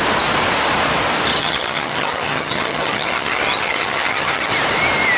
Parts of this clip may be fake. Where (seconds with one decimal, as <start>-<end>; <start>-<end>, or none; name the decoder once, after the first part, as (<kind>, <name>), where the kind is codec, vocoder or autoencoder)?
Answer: 1.4-4.5 (vocoder, HiFi-GAN)